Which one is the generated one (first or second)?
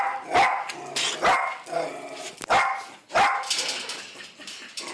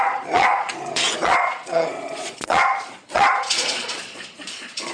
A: second